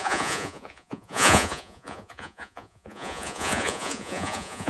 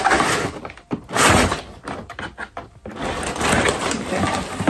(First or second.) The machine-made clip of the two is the first